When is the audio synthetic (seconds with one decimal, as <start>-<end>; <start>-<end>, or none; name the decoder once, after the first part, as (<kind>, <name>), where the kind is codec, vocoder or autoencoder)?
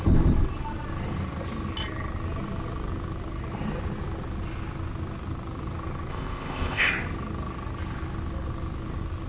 6.1-6.9 (codec, ZipCodec)